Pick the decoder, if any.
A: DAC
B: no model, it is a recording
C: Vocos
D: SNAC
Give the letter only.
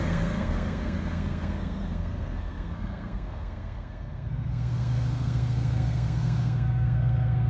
D